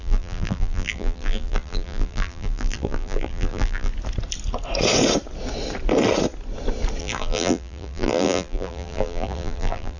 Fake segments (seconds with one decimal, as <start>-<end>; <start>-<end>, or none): 0.0-3.9; 7.0-10.0